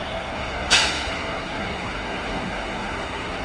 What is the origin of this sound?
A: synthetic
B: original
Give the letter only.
A